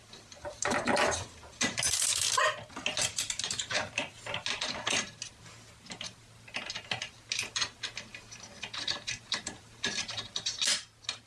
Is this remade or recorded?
recorded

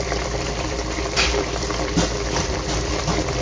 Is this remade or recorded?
remade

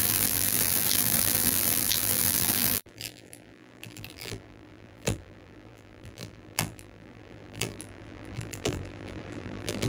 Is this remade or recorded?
remade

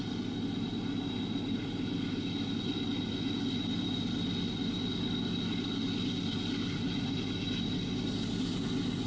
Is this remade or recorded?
recorded